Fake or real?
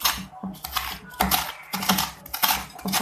real